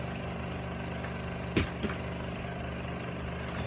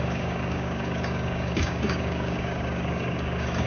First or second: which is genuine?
first